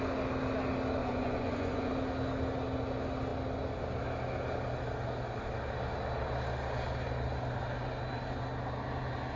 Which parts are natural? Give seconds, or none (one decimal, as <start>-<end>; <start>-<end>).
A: 0.0-1.0; 1.9-9.4